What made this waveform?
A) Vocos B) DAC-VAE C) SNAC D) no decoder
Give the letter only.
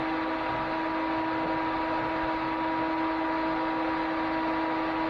D